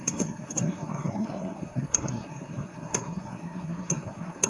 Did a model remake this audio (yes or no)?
yes